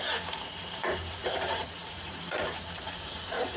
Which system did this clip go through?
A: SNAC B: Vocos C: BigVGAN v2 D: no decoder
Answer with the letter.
B